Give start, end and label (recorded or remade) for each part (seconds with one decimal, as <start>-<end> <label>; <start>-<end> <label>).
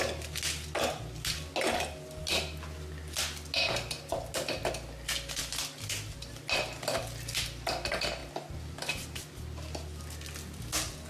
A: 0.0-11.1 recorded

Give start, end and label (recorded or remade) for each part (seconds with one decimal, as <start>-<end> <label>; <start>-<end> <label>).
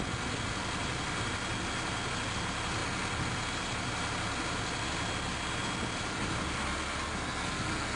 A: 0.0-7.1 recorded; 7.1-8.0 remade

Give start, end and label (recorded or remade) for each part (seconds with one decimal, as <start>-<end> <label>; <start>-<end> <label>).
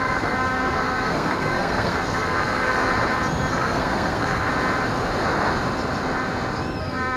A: 0.0-2.9 remade; 2.9-3.5 recorded; 3.5-4.5 remade; 4.5-6.8 recorded; 6.8-7.2 remade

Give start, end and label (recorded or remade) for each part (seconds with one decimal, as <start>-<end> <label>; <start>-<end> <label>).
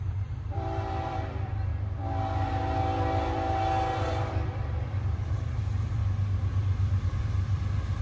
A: 0.0-1.7 remade; 1.7-4.1 recorded; 4.1-6.0 remade; 6.0-7.0 recorded; 7.0-8.0 remade